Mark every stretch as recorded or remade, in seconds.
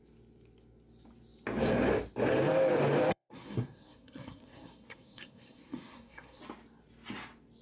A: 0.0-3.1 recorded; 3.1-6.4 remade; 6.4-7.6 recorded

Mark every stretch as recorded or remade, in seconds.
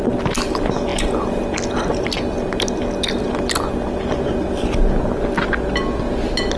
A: 0.0-6.6 recorded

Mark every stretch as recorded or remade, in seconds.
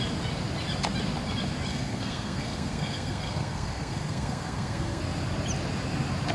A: 0.0-1.7 recorded; 1.7-5.0 remade; 5.0-6.3 recorded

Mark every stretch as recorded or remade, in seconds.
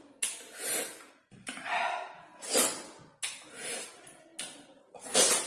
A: 0.0-5.5 recorded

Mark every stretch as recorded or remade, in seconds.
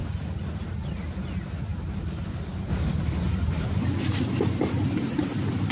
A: 0.0-5.7 recorded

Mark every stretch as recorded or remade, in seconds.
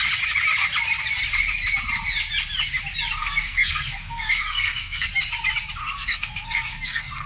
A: 0.0-3.2 recorded; 3.2-5.1 remade; 5.1-5.8 recorded; 5.8-7.3 remade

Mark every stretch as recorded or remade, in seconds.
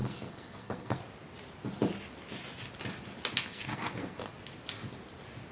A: 0.0-1.0 remade; 1.0-3.5 recorded; 3.5-4.3 remade; 4.3-5.5 recorded